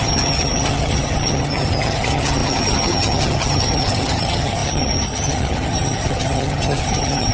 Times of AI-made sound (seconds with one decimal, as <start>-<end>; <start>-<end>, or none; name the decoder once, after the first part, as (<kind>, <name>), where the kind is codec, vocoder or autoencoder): 0.0-7.3 (vocoder, HiFi-GAN)